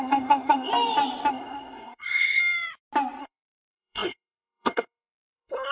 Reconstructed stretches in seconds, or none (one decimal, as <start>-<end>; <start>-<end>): 0.0-0.7; 1.3-2.4; 3.2-5.7